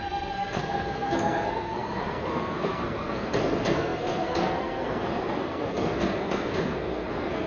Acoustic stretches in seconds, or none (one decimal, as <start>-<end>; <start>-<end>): none